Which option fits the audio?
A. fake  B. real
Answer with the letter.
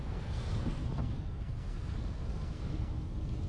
A